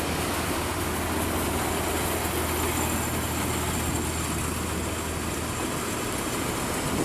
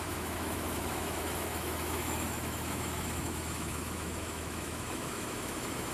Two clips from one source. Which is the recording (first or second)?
first